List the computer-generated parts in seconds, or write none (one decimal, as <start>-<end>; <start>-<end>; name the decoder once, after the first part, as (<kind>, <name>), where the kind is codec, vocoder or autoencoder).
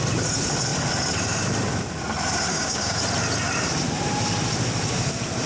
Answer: 2.5-3.0 (codec, DAC)